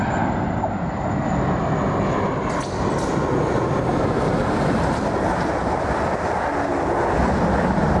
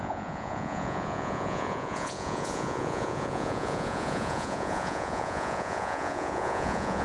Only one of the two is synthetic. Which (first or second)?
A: second